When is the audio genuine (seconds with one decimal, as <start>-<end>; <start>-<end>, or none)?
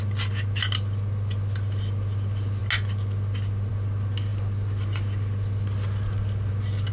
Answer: 0.0-6.9